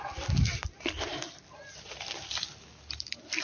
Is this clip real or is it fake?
fake